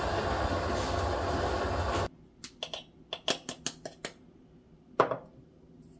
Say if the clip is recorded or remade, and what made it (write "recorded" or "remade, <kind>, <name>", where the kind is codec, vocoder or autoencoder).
recorded